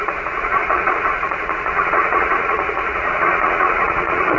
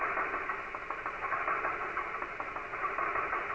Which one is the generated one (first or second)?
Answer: first